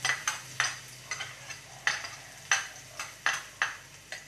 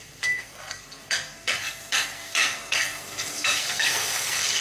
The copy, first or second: second